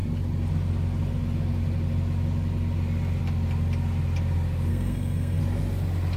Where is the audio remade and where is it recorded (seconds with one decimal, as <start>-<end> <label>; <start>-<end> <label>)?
0.0-4.7 recorded; 4.7-5.4 remade; 5.4-6.2 recorded